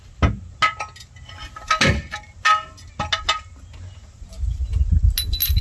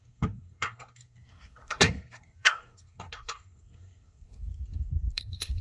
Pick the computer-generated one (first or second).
second